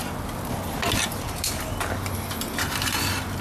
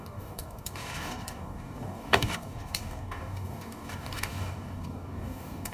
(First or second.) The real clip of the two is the first